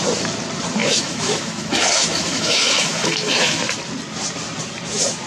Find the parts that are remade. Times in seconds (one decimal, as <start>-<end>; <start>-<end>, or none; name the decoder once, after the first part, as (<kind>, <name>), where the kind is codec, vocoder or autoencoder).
0.8-3.7 (autoencoder, DAC-VAE)